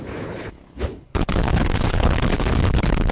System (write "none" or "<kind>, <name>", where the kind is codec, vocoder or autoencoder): codec, HILCodec